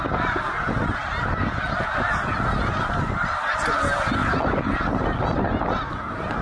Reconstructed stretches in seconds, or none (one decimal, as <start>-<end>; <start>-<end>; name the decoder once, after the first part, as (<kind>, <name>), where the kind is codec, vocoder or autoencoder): none

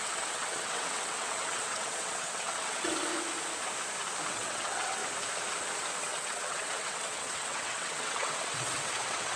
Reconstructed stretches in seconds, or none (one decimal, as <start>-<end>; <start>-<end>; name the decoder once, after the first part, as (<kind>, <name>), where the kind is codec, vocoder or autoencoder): 0.0-3.1 (vocoder, WaveNeXt); 4.3-5.0; 6.0-9.4

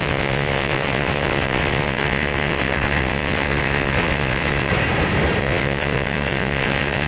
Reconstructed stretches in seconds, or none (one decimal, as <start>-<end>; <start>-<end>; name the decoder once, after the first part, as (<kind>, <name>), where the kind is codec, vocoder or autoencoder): 0.0-4.7 (vocoder, WaveNeXt); 5.4-7.1

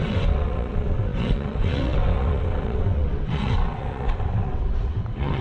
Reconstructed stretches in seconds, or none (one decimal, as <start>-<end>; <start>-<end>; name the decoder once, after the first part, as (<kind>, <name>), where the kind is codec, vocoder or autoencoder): 0.0-5.4 (vocoder, WaveNeXt)

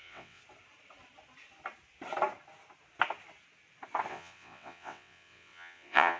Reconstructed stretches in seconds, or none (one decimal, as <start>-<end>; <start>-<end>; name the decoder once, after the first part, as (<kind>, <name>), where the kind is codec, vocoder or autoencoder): 0.0-0.4 (vocoder, WaveNeXt); 4.1-6.2

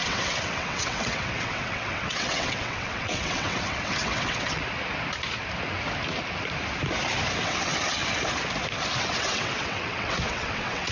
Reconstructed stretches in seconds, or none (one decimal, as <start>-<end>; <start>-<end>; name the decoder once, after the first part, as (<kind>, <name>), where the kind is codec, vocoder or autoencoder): 0.0-4.6 (vocoder, WaveNeXt); 7.4-8.0; 9.0-10.9

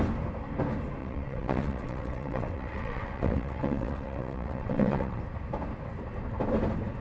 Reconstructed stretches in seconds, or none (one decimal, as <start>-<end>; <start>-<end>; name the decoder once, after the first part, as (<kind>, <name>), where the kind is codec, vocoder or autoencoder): 1.0-5.2 (vocoder, WaveNeXt)